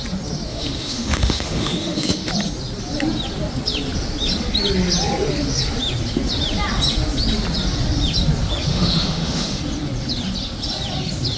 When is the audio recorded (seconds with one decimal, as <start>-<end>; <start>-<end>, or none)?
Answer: 0.0-0.5; 2.3-8.7; 9.6-11.4